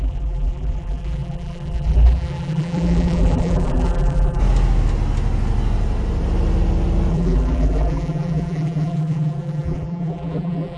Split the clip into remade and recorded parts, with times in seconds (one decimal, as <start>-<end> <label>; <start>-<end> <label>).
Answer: 0.0-4.4 remade; 4.4-7.1 recorded; 7.1-10.8 remade

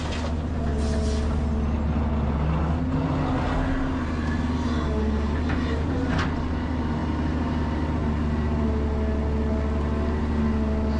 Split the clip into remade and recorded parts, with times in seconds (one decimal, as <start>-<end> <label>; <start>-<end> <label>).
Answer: 0.0-11.0 recorded

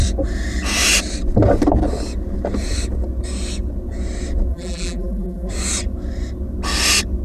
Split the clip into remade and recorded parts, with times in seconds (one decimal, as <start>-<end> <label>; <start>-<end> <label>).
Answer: 0.0-4.5 recorded; 4.5-5.5 remade; 5.5-7.2 recorded